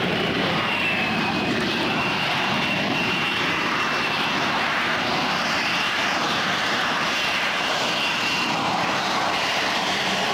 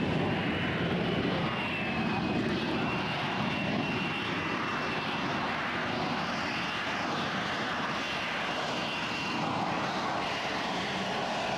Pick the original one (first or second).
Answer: second